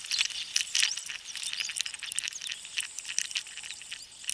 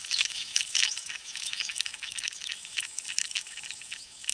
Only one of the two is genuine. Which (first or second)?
first